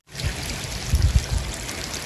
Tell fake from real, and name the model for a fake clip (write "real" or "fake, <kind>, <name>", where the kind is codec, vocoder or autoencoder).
real